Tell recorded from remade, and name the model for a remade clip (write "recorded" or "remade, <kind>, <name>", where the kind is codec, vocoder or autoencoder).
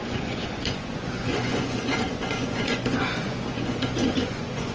remade, vocoder, Vocos